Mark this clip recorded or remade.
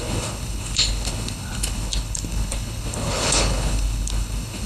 remade